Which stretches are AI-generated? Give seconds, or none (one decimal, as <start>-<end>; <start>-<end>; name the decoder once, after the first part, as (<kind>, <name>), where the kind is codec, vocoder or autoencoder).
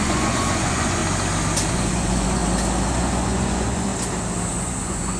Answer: 0.0-1.0 (vocoder, Vocos); 1.7-2.4; 2.9-3.9; 4.5-5.2